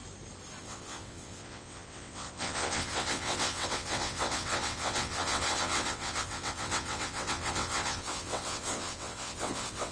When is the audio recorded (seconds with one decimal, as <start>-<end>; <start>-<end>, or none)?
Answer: 0.0-0.6